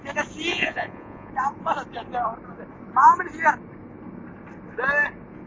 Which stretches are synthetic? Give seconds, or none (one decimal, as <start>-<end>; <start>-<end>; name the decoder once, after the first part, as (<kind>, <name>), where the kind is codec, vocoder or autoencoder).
0.5-1.3 (vocoder, Vocos)